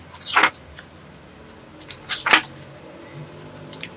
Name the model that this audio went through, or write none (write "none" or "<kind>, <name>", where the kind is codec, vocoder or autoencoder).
none